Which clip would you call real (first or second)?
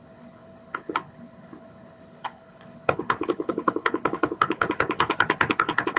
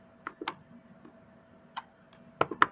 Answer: second